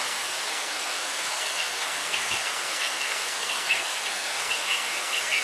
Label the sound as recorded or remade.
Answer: remade